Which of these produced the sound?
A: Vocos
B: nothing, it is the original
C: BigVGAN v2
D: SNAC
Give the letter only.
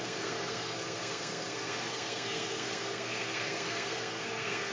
D